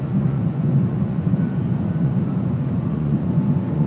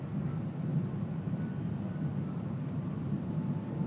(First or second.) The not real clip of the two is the first